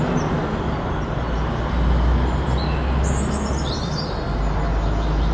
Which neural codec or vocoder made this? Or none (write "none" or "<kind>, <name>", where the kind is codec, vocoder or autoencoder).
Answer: none